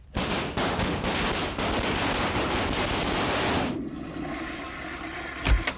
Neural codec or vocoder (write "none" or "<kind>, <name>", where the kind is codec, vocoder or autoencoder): none